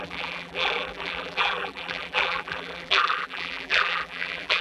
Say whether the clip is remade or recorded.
remade